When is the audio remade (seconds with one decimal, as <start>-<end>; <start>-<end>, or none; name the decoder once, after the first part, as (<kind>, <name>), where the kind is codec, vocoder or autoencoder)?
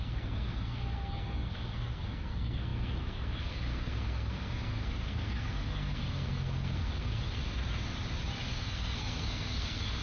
0.0-7.4 (codec, SNAC); 8.4-10.0